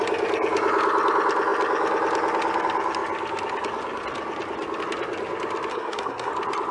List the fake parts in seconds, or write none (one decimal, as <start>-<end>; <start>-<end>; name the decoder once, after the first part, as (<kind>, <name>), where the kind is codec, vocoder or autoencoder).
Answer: 5.7-6.3 (codec, SNAC)